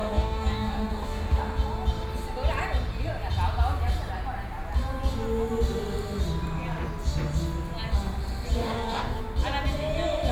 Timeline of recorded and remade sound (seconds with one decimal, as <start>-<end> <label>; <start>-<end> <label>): 0.0-1.4 remade; 1.4-8.6 recorded; 8.6-9.2 remade; 9.2-10.3 recorded